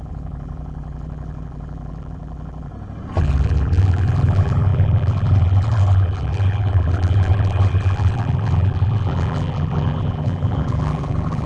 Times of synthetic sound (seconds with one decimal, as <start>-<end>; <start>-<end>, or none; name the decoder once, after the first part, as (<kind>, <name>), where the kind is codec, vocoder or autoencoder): 0.0-2.7 (vocoder, BigVGAN v2); 3.2-11.5